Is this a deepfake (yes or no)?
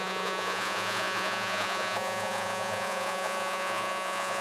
yes